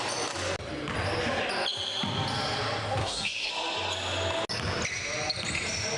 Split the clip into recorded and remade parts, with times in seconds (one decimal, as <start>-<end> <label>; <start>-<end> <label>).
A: 0.0-3.0 recorded; 3.0-3.5 remade; 3.5-6.0 recorded